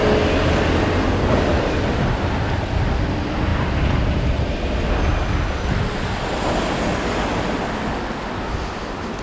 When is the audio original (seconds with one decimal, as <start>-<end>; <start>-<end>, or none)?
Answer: 0.0-3.5; 4.8-9.2